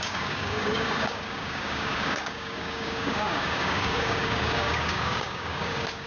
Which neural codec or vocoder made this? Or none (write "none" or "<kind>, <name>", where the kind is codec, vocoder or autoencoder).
codec, DAC